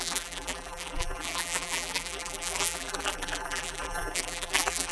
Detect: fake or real fake